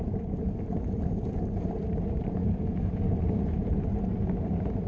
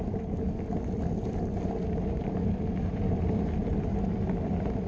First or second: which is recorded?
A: second